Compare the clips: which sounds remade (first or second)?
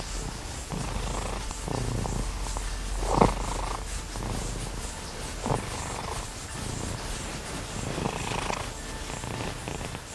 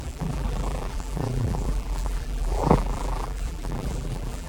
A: second